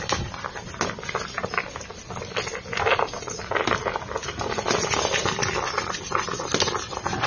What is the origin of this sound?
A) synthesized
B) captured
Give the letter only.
B